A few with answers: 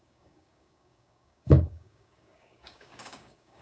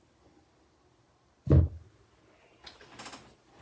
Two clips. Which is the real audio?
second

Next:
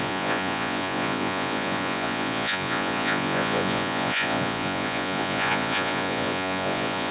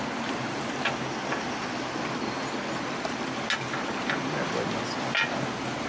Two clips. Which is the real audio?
second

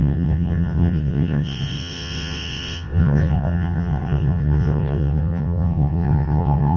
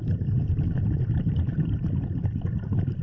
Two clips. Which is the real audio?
second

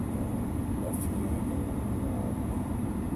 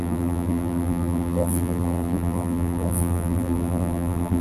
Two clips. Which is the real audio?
first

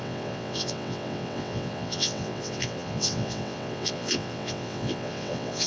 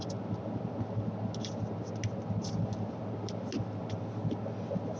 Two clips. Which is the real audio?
second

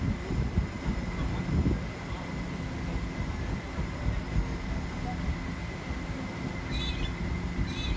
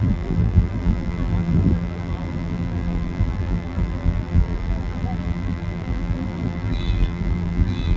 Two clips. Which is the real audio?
first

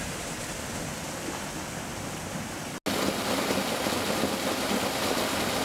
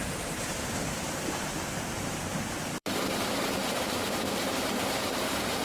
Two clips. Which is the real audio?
first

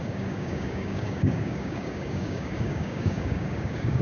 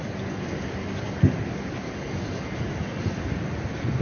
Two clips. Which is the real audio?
second